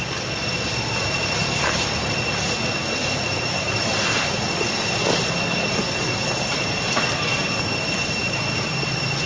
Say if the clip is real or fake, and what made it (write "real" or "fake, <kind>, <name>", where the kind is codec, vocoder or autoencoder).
real